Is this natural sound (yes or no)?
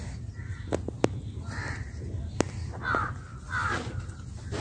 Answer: yes